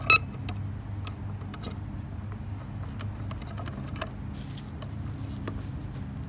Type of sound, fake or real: real